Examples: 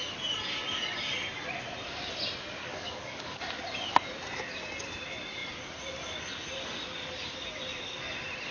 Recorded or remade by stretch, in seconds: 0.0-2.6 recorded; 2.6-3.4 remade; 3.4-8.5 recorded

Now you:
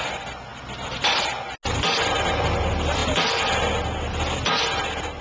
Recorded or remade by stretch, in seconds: 0.0-5.2 recorded

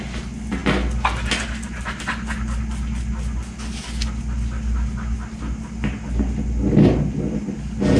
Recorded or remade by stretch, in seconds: 0.0-8.0 recorded